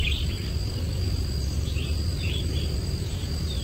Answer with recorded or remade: recorded